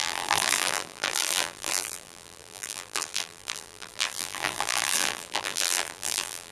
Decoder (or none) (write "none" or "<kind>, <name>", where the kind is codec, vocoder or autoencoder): vocoder, BigVGAN v2